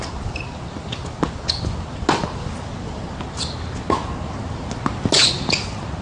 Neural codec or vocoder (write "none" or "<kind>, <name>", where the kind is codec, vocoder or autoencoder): none